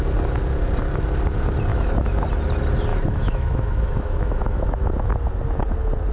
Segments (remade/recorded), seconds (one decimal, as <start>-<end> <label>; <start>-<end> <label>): 0.0-1.7 recorded; 1.7-2.3 remade; 2.3-2.9 recorded; 2.9-5.1 remade; 5.1-6.1 recorded